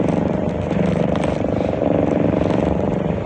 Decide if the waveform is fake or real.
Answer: fake